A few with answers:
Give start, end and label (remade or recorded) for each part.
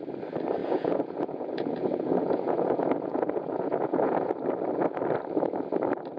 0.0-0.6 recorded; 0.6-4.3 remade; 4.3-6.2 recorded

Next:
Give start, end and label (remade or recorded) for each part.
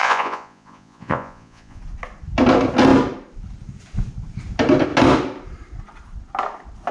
0.0-1.8 remade; 1.8-6.9 recorded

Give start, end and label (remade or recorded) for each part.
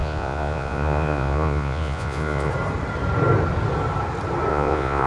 0.0-2.5 remade; 2.5-4.5 recorded; 4.5-5.1 remade